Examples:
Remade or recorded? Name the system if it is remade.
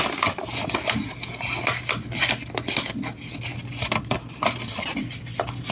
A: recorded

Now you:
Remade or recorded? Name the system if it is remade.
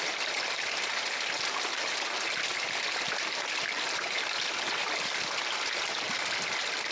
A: recorded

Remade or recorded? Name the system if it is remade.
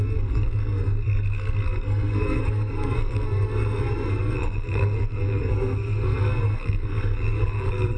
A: remade, codec, SNAC